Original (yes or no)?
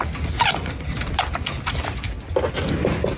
yes